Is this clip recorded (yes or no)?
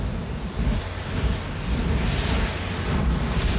yes